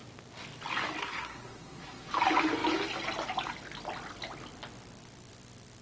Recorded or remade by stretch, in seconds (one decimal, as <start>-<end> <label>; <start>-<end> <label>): 0.0-1.0 recorded; 1.0-2.1 remade; 2.1-5.8 recorded